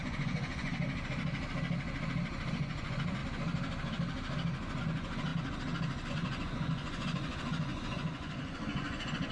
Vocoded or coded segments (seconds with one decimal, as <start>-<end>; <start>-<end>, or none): 0.0-0.7; 2.5-3.2; 4.8-5.3; 6.1-9.3